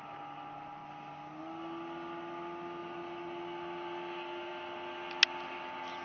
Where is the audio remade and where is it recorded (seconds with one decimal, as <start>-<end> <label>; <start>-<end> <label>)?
0.0-6.0 recorded